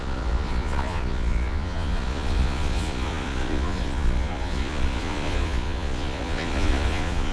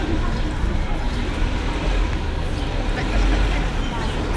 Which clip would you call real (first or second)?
second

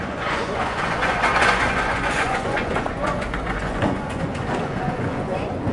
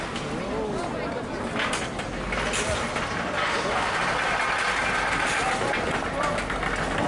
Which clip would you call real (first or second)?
second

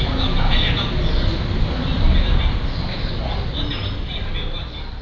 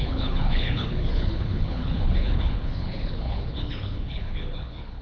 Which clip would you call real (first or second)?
first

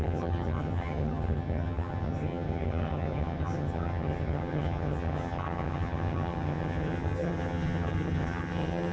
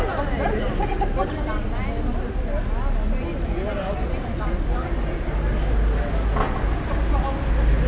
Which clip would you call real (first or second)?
second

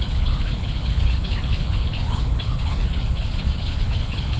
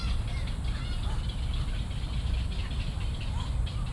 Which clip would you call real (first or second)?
second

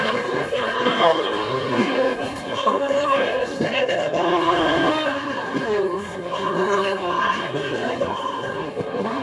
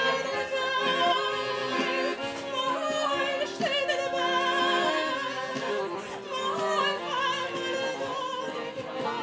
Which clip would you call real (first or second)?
second